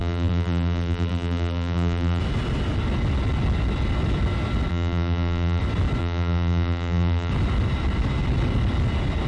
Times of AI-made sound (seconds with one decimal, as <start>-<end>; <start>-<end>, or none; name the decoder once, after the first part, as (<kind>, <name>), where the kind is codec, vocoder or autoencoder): 0.0-2.2 (vocoder, BigVGAN v2); 4.7-5.6; 6.0-7.3